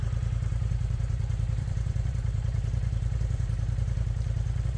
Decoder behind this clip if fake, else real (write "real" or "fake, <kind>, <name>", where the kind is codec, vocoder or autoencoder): fake, vocoder, BigVGAN v2